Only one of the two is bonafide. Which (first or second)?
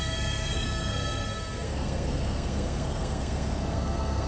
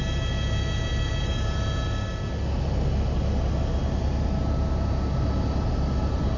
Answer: second